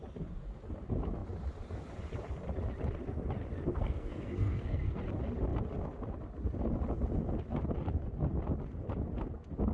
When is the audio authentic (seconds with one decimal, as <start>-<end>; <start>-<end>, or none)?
0.0-3.7; 5.0-9.7